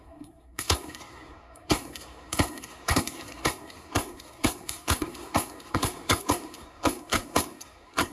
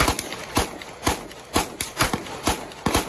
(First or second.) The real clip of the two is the second